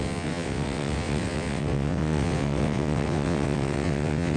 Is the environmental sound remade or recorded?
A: remade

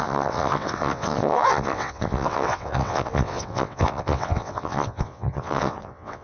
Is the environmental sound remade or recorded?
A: remade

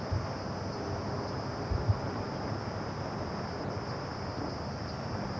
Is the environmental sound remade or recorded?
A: recorded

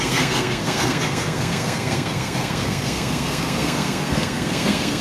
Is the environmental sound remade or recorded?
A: remade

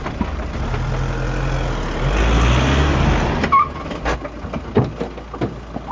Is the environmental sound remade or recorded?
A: recorded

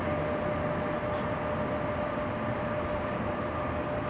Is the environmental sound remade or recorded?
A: recorded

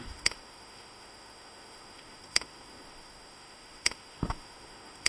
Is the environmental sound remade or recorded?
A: remade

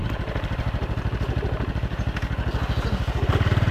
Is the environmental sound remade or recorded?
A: recorded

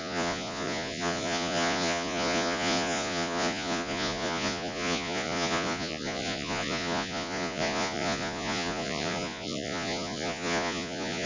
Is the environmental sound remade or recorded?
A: remade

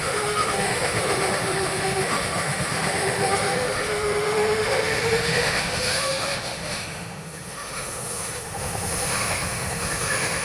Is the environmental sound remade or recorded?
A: remade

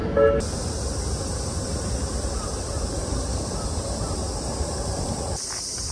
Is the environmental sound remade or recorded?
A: recorded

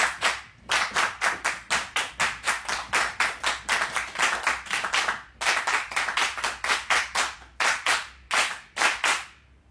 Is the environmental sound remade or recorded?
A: recorded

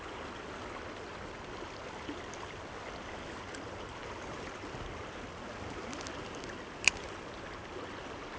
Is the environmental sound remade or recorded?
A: recorded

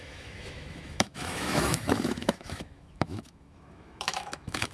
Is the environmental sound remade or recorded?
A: remade